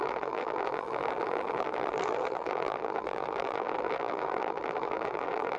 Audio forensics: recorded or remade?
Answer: remade